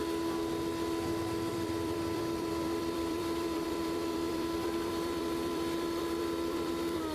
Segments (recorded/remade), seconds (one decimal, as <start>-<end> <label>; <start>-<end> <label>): 0.0-1.5 recorded; 1.5-7.1 remade